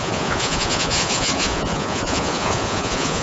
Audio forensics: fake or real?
fake